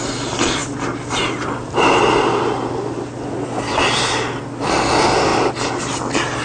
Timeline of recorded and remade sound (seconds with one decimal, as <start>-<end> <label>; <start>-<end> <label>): 0.0-6.4 recorded